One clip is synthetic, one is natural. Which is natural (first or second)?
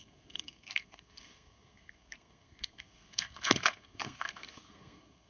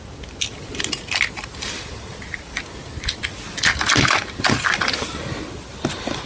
second